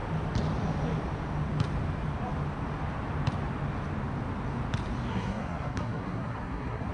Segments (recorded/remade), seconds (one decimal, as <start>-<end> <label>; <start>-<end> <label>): 0.0-5.1 recorded; 5.1-6.9 remade